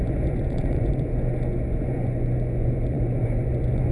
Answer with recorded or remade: remade